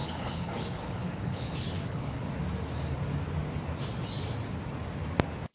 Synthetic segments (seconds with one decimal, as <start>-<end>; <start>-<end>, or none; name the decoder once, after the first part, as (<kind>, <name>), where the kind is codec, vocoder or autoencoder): 0.0-2.3 (codec, HILCodec)